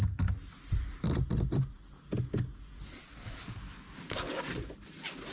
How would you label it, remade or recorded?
recorded